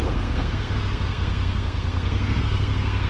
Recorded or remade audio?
remade